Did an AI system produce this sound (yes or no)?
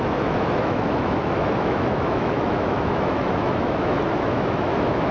yes